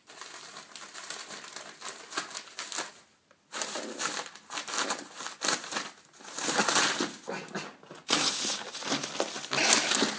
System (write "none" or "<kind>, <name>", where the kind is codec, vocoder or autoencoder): none